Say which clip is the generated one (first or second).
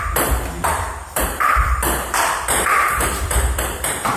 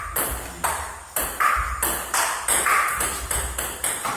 first